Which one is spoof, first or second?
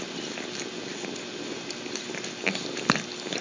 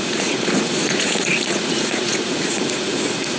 second